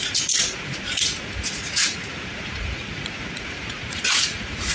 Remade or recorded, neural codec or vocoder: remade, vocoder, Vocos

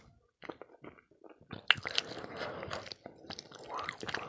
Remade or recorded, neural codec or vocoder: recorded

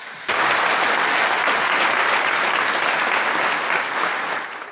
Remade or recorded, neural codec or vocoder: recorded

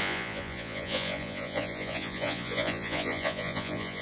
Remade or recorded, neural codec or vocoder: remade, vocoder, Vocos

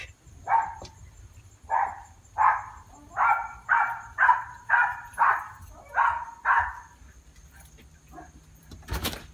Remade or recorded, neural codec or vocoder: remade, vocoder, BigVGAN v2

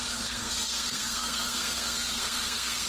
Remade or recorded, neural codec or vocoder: remade, codec, SNAC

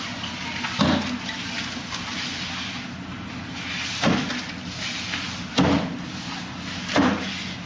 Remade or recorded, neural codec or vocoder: recorded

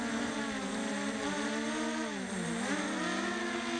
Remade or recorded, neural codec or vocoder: recorded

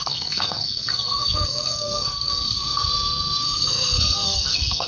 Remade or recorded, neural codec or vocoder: remade, codec, SNAC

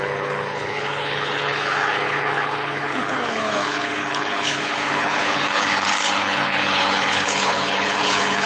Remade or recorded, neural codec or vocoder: remade, codec, HILCodec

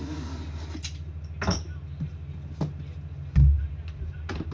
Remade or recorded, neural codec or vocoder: recorded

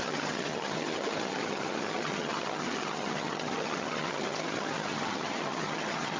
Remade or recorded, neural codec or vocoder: remade, vocoder, HiFi-GAN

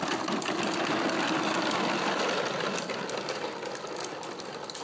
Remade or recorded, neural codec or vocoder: recorded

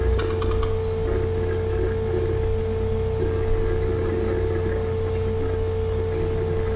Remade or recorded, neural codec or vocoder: recorded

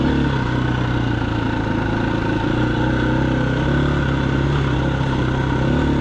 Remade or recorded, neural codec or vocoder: recorded